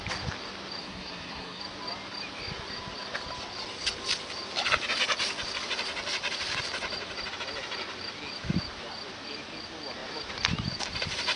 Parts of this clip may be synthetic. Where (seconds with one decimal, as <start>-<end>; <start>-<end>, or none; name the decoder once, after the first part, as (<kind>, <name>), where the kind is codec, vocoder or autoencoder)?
0.8-1.6 (codec, SNAC)